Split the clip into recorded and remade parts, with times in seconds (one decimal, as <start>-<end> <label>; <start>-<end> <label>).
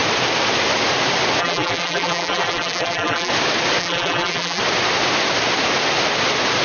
0.0-1.4 recorded; 1.4-3.3 remade; 3.3-3.8 recorded; 3.8-4.6 remade; 4.6-6.6 recorded